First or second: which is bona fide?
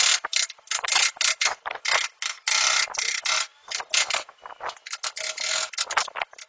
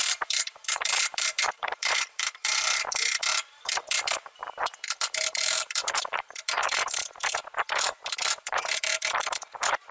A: first